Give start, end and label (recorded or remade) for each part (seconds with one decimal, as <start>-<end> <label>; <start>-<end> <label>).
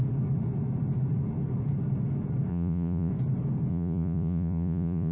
0.0-2.5 recorded; 2.5-3.1 remade; 3.1-3.7 recorded; 3.7-5.1 remade